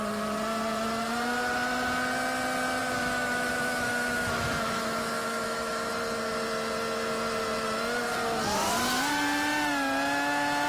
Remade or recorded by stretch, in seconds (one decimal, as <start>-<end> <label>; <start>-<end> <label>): 0.0-2.8 recorded; 2.8-5.9 remade; 5.9-10.7 recorded